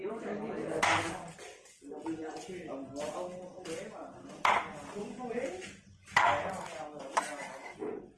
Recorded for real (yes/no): yes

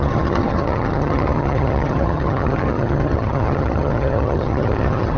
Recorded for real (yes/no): no